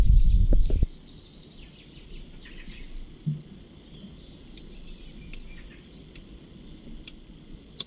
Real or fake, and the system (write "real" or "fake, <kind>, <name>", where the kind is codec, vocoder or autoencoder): real